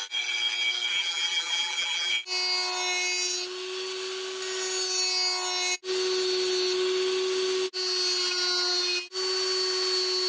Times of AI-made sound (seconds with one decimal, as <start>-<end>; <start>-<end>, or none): 0.9-2.1